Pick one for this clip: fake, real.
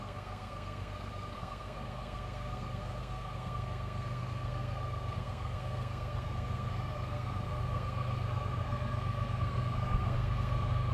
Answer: fake